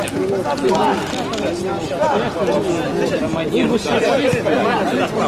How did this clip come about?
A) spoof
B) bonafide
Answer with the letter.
B